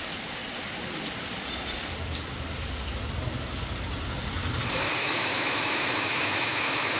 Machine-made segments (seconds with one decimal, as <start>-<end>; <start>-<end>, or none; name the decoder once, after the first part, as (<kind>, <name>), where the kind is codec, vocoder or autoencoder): 5.0-7.0 (autoencoder, DAC-VAE)